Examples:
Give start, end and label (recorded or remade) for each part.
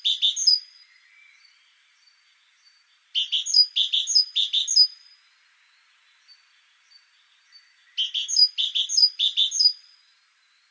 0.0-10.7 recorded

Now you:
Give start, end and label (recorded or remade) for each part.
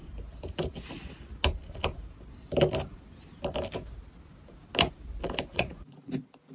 0.0-5.5 recorded; 5.5-6.1 remade; 6.1-6.5 recorded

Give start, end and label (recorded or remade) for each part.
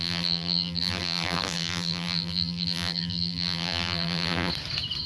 0.0-4.5 remade; 4.5-5.1 recorded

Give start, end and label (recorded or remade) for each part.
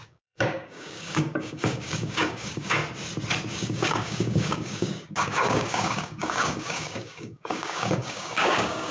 0.0-2.8 remade; 2.8-3.5 recorded; 3.5-8.9 remade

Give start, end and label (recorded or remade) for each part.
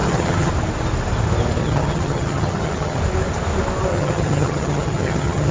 0.0-0.5 remade; 0.5-1.6 recorded; 1.6-3.0 remade; 3.0-3.9 recorded; 3.9-5.5 remade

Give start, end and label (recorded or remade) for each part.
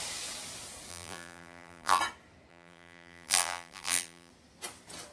0.0-0.9 recorded; 0.9-2.0 remade; 2.0-2.5 recorded; 2.5-4.3 remade; 4.3-5.1 recorded